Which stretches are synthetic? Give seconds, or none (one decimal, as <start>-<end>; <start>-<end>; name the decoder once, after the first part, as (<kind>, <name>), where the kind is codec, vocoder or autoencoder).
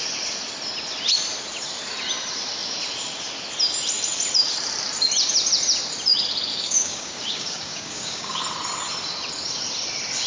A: 6.5-8.4 (codec, DAC)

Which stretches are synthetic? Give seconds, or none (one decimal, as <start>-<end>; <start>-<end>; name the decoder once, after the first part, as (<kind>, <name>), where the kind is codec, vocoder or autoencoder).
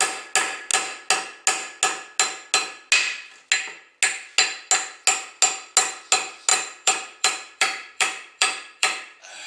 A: 6.5-9.5 (vocoder, BigVGAN v2)